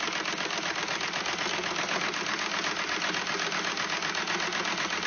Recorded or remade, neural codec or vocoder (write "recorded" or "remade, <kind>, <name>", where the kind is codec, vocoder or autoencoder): recorded